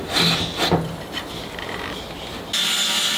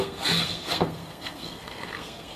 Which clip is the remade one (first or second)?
second